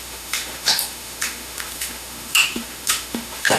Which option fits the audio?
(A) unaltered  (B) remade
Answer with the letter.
B